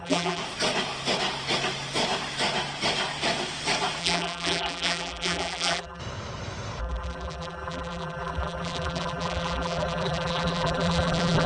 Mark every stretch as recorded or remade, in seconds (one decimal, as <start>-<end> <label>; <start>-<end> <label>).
0.0-0.4 remade; 0.4-4.0 recorded; 4.0-6.0 remade; 6.0-6.8 recorded; 6.8-11.5 remade